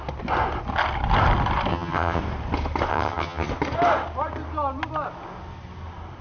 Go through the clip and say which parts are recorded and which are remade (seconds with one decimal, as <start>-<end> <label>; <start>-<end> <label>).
0.0-1.7 recorded; 1.7-2.2 remade; 2.2-2.9 recorded; 2.9-3.5 remade; 3.5-6.2 recorded